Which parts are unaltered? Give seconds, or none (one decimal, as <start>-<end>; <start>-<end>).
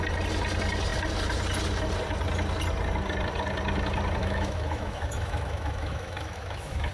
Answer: 0.0-4.2